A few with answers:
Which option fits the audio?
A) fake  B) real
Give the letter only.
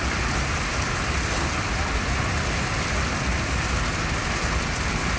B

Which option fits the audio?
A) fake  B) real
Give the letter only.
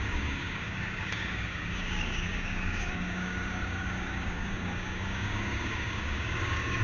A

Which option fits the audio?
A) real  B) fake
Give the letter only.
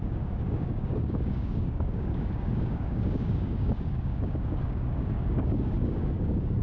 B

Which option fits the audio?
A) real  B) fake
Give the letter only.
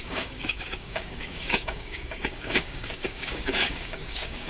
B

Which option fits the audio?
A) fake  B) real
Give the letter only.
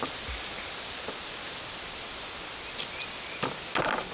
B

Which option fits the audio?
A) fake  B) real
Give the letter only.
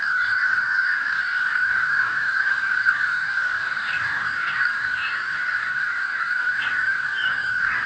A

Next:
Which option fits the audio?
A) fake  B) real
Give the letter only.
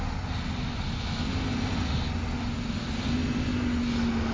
B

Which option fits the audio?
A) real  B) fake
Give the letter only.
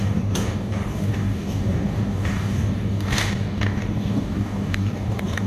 B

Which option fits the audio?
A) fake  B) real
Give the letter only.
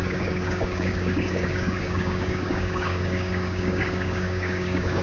A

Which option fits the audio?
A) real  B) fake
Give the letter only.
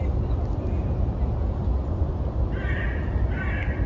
A